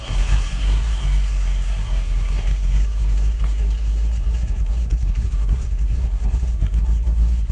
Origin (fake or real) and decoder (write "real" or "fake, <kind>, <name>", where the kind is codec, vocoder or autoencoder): fake, codec, SNAC